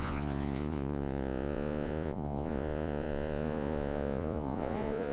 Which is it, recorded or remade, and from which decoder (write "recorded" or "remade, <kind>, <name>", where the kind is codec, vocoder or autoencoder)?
remade, vocoder, Vocos